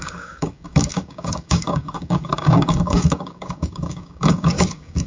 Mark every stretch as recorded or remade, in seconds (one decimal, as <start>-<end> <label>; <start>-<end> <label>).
0.0-5.1 remade